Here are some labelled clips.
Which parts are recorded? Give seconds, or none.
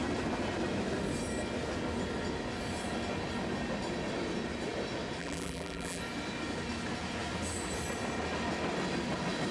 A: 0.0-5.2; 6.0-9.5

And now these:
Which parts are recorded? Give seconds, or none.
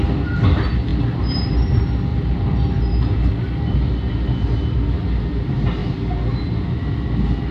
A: 0.0-0.9; 1.7-2.1; 2.8-7.5